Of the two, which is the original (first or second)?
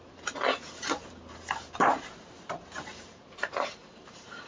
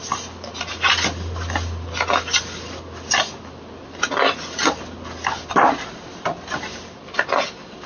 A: second